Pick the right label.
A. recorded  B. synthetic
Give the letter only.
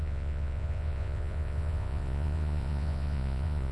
B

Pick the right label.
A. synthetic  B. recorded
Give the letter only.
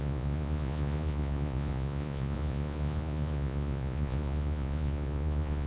A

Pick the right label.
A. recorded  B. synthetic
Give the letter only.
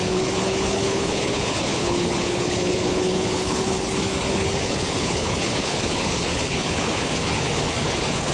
B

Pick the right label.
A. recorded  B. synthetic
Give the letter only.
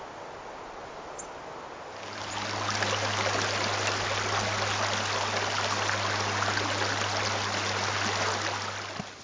A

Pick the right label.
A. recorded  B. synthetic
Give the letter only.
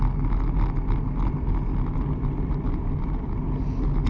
A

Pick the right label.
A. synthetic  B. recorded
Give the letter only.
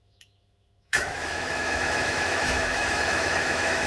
A